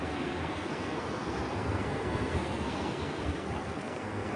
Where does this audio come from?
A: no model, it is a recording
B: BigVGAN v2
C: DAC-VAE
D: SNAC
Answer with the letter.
D